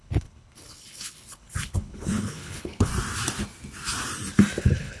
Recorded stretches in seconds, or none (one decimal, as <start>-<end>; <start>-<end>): 2.9-4.6